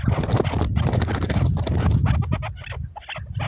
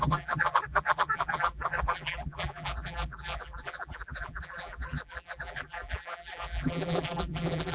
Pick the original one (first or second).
first